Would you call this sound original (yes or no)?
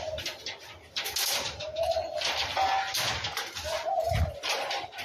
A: yes